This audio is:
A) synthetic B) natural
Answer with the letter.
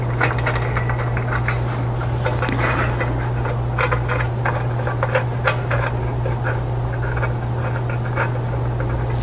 B